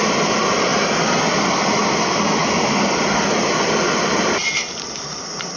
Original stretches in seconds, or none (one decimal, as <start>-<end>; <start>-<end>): 0.0-5.6